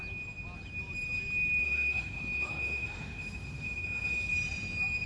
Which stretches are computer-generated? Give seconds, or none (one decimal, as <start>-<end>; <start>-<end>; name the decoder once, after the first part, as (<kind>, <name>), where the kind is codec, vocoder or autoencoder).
1.6-4.3 (autoencoder, DAC-VAE)